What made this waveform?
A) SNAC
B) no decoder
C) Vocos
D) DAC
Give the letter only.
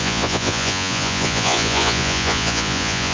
C